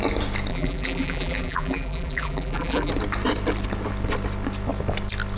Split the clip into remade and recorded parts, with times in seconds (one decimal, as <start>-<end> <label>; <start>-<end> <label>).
0.0-0.5 recorded; 0.5-2.9 remade; 2.9-5.4 recorded